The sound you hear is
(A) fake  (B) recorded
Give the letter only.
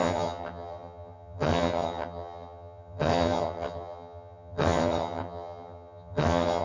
A